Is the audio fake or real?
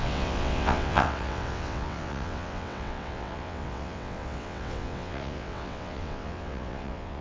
fake